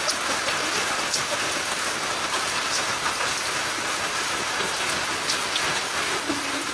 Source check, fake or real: real